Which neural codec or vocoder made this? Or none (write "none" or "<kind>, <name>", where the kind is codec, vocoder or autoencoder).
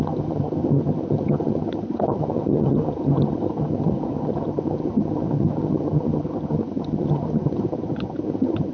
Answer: vocoder, HiFi-GAN